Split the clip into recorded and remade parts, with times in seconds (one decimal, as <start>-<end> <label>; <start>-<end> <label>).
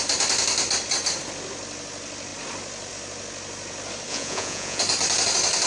0.0-4.1 recorded; 4.1-4.8 remade; 4.8-5.7 recorded